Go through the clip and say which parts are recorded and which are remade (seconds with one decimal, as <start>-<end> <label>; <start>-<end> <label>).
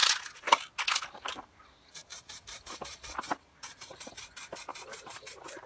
0.0-1.1 recorded; 1.1-5.7 remade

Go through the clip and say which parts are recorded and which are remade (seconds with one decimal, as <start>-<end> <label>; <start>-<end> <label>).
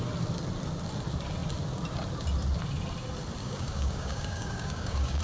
0.0-3.4 recorded; 3.4-5.2 remade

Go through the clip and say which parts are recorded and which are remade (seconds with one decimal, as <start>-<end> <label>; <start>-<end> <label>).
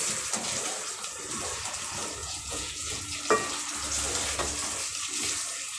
0.0-2.2 recorded; 2.2-3.0 remade; 3.0-5.8 recorded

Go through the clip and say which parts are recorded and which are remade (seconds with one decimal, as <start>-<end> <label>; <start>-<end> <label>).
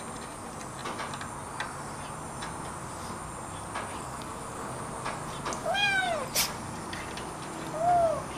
0.0-3.9 recorded; 3.9-4.8 remade; 4.8-5.6 recorded; 5.6-6.1 remade; 6.1-8.4 recorded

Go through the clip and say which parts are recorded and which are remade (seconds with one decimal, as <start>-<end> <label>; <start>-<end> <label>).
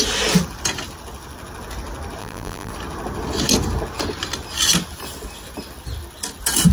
0.0-2.2 recorded; 2.2-2.7 remade; 2.7-6.7 recorded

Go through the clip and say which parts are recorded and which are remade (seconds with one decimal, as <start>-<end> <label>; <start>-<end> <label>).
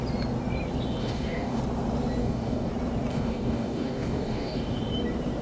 0.0-1.0 recorded; 1.0-1.6 remade; 1.6-2.2 recorded; 2.2-2.7 remade; 2.7-3.1 recorded; 3.1-4.8 remade; 4.8-5.4 recorded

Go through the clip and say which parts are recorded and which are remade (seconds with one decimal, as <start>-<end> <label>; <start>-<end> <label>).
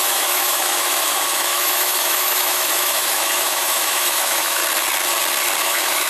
0.0-4.6 remade; 4.6-5.6 recorded; 5.6-6.1 remade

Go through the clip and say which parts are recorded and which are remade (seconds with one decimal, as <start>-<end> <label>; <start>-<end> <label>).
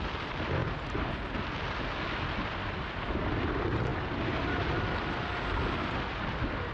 0.0-0.6 recorded; 0.6-1.1 remade; 1.1-6.7 recorded